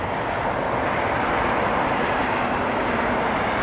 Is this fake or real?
real